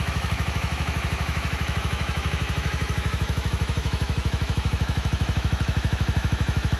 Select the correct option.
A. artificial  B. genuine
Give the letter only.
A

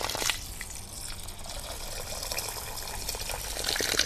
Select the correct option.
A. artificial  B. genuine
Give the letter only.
B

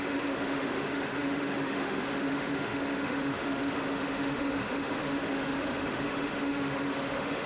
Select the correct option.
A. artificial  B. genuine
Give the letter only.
A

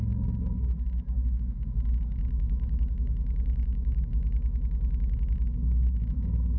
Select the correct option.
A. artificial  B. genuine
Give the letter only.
A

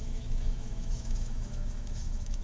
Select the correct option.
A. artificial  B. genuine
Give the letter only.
A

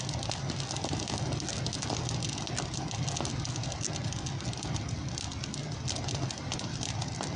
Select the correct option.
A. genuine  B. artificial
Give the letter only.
A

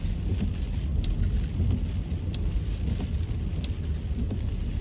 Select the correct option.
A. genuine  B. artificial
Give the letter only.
A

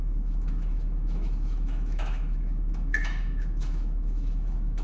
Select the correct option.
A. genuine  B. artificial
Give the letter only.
B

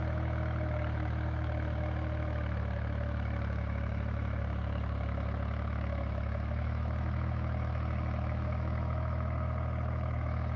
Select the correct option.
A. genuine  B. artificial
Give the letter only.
B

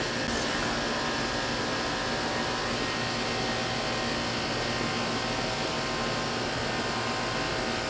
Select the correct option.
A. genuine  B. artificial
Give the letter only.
A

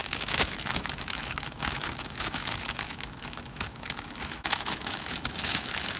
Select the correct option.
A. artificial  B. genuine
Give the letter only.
A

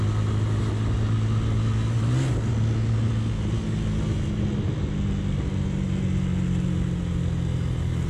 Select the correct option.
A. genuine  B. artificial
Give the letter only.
A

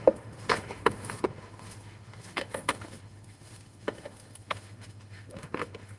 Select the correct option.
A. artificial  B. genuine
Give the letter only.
A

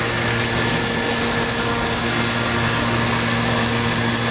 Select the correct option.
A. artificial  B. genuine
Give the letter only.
B